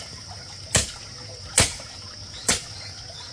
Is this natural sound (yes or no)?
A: yes